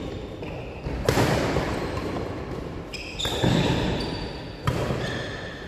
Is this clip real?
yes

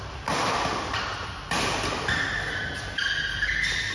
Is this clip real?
yes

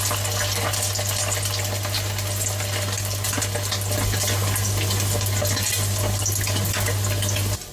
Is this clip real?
yes